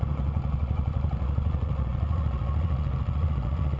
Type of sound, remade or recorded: remade